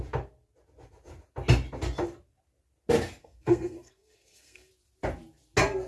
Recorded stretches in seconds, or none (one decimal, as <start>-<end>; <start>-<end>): 0.0-3.2; 4.7-5.9